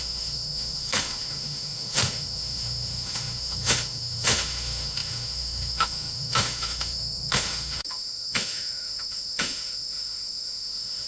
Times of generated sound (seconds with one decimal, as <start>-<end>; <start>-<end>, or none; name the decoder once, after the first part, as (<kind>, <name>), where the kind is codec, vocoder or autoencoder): 0.0-11.1 (autoencoder, DAC-VAE)